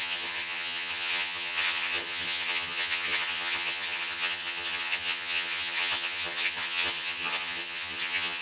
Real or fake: fake